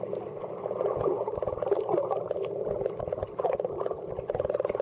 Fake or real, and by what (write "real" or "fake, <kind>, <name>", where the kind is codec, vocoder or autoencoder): real